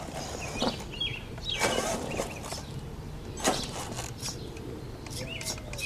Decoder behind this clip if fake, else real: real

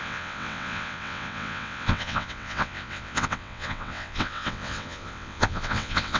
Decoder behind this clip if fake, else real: fake, vocoder, WaveNeXt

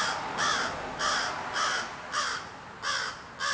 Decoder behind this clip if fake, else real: real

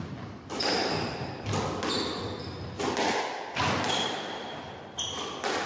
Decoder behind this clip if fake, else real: real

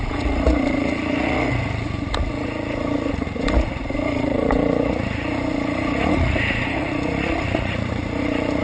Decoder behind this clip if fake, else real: fake, vocoder, Vocos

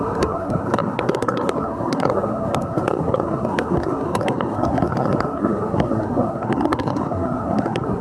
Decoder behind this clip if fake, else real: fake, codec, SNAC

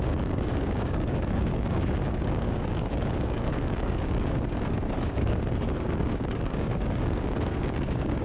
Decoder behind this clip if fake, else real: fake, codec, DAC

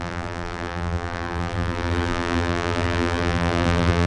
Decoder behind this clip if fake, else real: fake, vocoder, BigVGAN v2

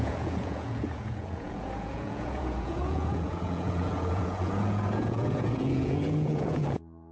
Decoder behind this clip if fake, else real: fake, vocoder, Vocos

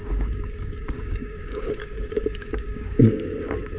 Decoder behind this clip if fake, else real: fake, codec, DAC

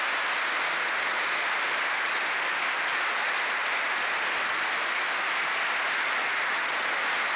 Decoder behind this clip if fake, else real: real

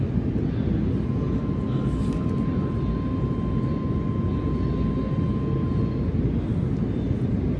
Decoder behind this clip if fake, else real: real